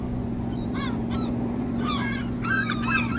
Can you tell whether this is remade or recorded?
remade